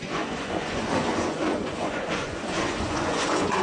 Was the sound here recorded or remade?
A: remade